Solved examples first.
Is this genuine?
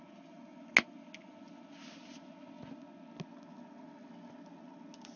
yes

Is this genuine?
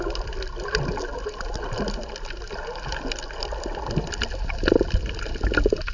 yes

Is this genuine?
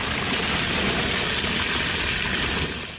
yes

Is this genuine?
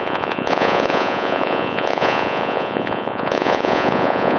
no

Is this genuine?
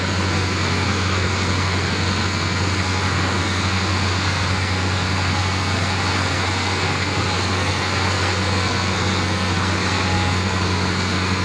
no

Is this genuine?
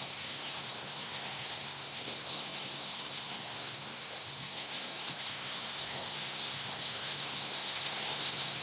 no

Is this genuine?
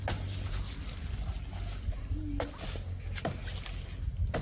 yes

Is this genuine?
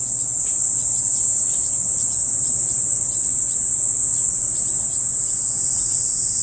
yes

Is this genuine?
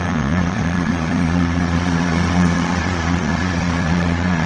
no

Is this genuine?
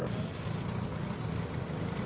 yes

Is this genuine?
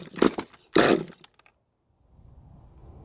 yes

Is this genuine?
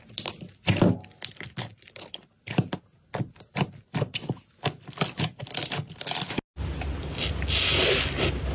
yes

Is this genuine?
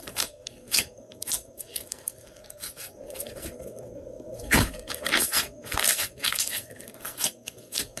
no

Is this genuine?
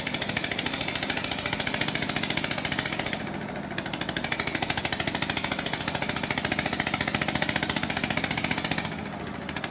yes